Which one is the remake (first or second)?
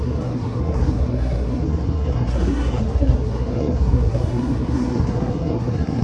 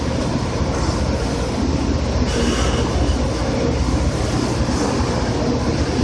first